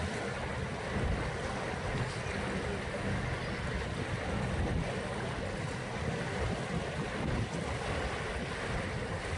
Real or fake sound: real